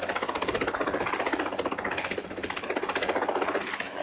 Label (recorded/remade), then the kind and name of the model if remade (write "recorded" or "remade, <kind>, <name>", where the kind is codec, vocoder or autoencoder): recorded